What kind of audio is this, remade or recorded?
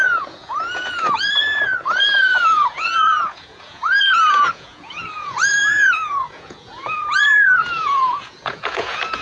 remade